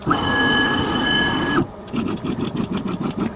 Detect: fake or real real